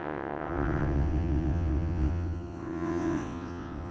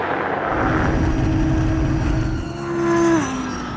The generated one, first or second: first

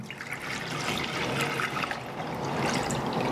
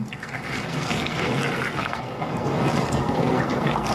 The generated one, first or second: second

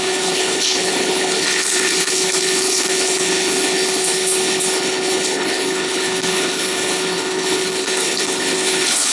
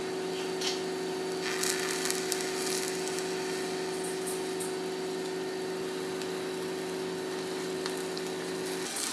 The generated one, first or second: first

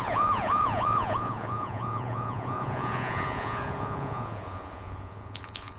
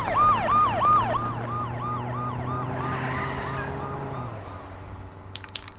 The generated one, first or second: first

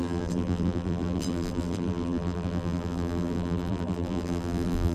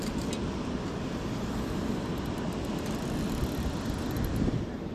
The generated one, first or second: first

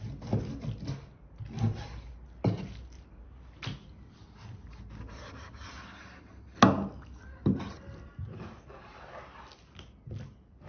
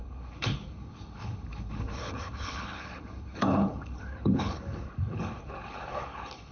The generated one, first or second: second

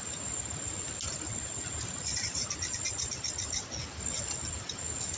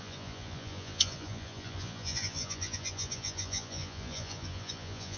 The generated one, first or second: second